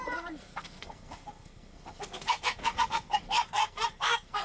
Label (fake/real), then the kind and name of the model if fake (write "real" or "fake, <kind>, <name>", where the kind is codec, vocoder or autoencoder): fake, codec, SNAC